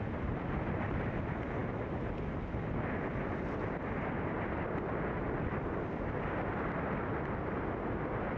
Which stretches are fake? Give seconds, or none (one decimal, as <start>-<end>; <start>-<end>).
none